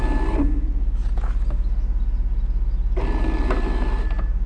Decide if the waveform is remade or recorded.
recorded